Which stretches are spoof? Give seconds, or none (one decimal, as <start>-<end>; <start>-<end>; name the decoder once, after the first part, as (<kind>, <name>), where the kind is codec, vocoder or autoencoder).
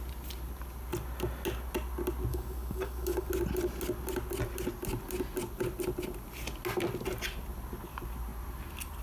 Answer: 2.3-3.3 (codec, DAC)